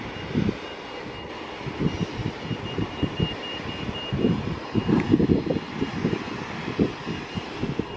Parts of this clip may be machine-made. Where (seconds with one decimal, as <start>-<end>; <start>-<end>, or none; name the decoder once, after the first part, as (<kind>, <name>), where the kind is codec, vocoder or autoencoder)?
2.2-4.5 (vocoder, BigVGAN v2)